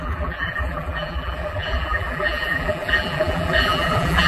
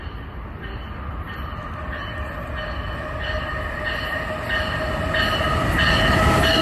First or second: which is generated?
first